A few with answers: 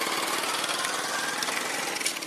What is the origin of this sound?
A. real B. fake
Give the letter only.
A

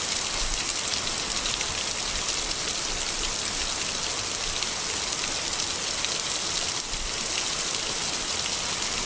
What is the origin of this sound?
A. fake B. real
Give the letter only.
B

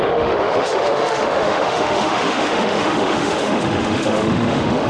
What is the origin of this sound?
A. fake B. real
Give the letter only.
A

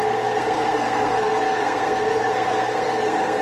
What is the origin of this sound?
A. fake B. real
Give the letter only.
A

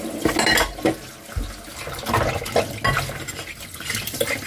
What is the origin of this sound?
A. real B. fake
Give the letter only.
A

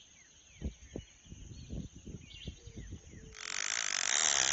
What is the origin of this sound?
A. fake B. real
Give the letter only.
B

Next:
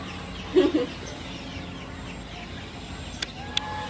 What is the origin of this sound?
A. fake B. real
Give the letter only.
B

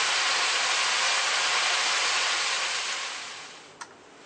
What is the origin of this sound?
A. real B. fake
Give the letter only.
A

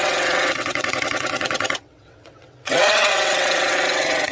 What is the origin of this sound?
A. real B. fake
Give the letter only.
B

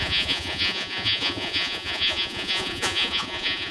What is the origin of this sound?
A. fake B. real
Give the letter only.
A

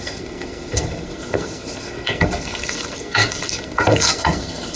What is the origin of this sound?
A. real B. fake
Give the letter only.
B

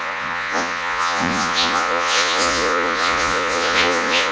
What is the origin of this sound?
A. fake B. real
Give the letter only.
A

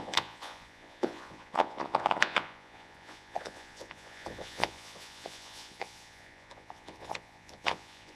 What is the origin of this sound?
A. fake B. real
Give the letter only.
A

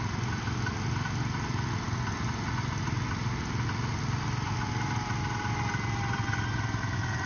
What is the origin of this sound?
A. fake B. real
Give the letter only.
B